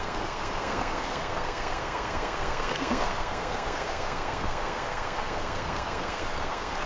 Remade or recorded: remade